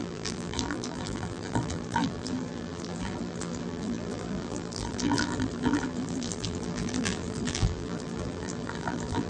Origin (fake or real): fake